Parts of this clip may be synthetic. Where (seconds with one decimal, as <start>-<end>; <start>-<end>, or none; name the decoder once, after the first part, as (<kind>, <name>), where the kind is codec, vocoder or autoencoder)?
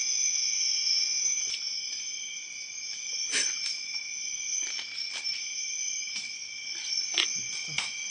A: 0.0-1.4 (autoencoder, DAC-VAE)